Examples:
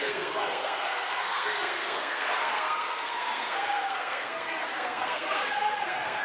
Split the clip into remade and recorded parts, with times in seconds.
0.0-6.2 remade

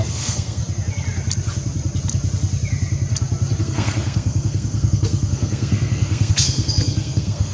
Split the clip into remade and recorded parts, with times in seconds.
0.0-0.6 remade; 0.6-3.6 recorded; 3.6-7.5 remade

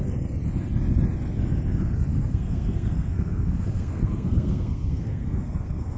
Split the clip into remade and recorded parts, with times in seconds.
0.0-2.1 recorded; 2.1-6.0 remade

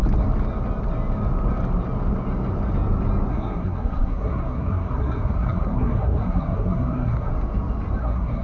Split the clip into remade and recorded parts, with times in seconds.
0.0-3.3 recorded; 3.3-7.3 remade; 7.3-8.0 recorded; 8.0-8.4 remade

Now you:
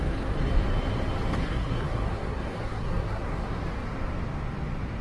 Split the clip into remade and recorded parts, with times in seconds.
0.0-1.4 recorded; 1.4-3.6 remade; 3.6-5.0 recorded

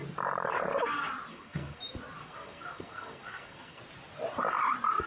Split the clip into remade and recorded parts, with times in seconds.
0.0-1.3 recorded; 1.3-1.8 remade; 1.8-2.2 recorded; 2.2-3.8 remade; 3.8-5.1 recorded

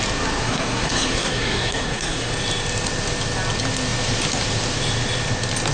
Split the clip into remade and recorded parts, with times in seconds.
0.0-0.4 recorded; 0.4-2.3 remade; 2.3-5.7 recorded